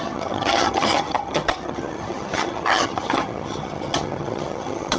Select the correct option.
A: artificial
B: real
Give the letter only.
A